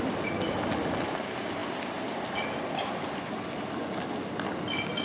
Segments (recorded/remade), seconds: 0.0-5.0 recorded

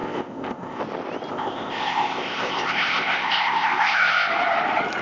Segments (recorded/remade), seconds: 0.0-0.8 remade; 0.8-1.3 recorded; 1.3-4.3 remade; 4.3-5.0 recorded

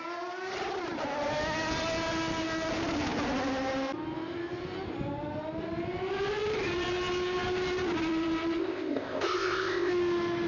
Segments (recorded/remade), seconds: 0.0-8.6 recorded; 8.6-9.9 remade; 9.9-10.5 recorded

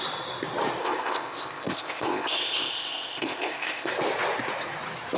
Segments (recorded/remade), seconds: 0.0-0.8 recorded; 0.8-3.9 remade; 3.9-5.2 recorded

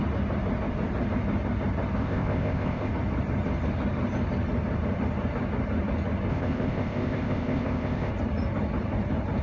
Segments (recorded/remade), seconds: 0.0-2.0 recorded; 2.0-2.9 remade; 2.9-6.3 recorded; 6.3-8.1 remade; 8.1-9.4 recorded